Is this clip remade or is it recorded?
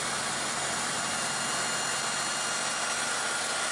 recorded